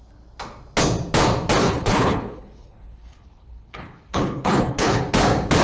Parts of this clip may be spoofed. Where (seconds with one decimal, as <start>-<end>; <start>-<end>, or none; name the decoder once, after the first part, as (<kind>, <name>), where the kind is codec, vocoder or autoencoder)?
1.6-5.0 (codec, HILCodec)